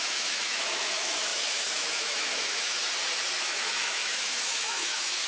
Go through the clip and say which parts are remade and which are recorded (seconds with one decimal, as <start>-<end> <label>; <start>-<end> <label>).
0.0-2.8 remade; 2.8-3.4 recorded; 3.4-5.3 remade